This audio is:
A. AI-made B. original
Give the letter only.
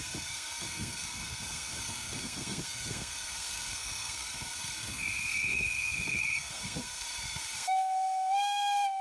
A